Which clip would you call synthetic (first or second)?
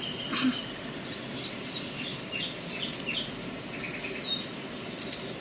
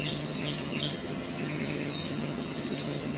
second